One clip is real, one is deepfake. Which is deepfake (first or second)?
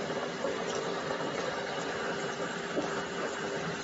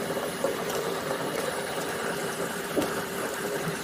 second